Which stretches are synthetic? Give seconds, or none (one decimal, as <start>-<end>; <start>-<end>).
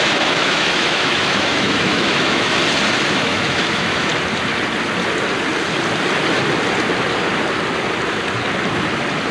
0.0-2.6; 3.1-4.1